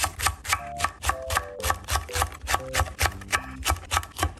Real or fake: real